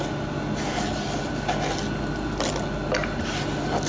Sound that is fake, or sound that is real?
real